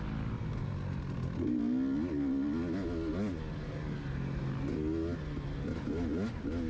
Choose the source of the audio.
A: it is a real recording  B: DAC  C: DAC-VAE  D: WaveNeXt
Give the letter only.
A